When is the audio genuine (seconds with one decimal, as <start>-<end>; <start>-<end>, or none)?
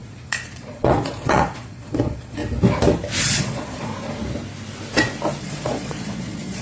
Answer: 2.4-3.2; 3.9-5.4